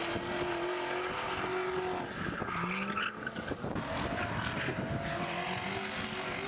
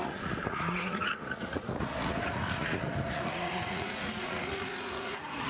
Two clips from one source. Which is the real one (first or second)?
first